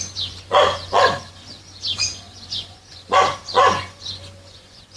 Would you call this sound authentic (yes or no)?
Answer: no